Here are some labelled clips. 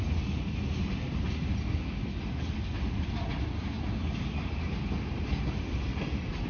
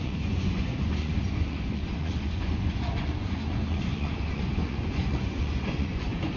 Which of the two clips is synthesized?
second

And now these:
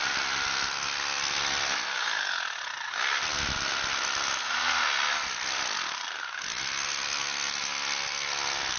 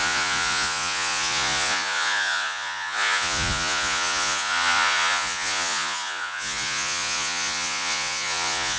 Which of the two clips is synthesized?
second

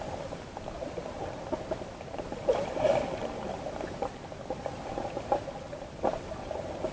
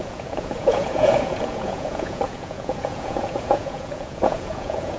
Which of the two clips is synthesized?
second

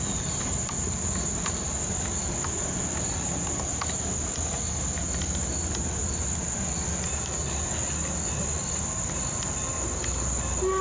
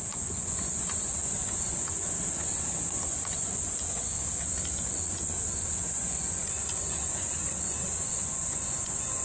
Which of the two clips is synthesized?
second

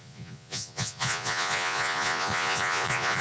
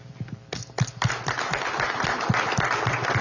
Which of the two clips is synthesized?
first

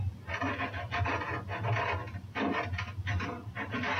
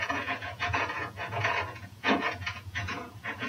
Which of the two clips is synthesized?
second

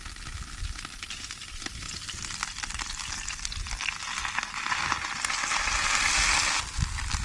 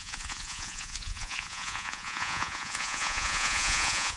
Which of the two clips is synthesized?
second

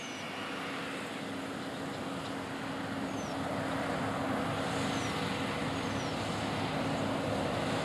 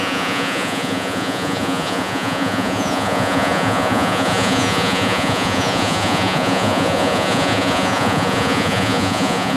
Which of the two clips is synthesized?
second